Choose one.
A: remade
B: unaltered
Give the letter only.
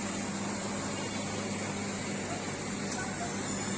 B